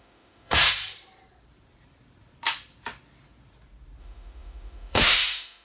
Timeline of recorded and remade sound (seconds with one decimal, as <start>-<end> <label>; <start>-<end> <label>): 0.0-0.6 remade; 0.6-4.0 recorded; 4.0-5.6 remade